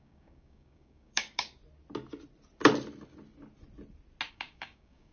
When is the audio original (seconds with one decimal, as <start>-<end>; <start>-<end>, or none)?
1.6-4.3